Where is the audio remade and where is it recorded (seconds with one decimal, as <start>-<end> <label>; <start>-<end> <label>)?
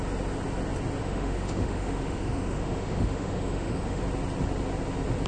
0.0-1.0 recorded; 1.0-4.0 remade; 4.0-5.3 recorded